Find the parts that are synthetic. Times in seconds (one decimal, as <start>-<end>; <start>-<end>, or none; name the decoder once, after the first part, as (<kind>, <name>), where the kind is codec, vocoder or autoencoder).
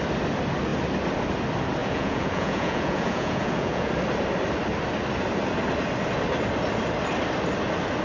1.8-3.9 (vocoder, Vocos)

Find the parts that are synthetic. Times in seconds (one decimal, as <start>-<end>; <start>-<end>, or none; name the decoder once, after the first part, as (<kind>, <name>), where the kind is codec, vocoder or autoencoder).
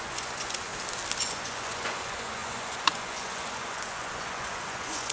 0.0-0.7 (vocoder, Vocos); 1.2-5.1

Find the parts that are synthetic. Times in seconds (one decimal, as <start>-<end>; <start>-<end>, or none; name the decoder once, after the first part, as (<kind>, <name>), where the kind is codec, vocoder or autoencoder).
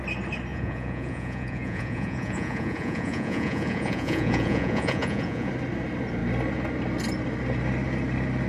0.5-5.5 (vocoder, Vocos)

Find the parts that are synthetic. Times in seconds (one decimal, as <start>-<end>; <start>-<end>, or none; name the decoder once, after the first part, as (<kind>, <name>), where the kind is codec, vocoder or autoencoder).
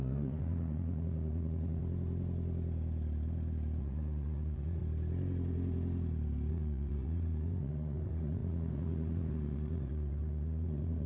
0.0-1.8 (vocoder, Vocos); 3.8-4.8; 6.5-11.1